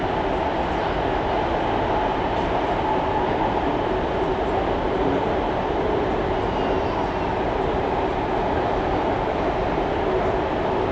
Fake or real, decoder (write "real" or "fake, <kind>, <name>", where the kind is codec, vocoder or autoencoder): real